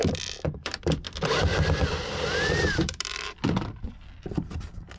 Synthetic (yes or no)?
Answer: yes